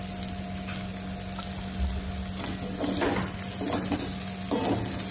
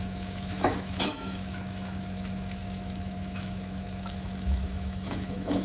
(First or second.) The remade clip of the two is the second